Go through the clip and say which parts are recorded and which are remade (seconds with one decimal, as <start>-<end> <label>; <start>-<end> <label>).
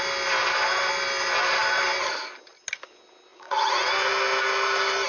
0.0-3.3 recorded; 3.3-3.9 remade; 3.9-5.1 recorded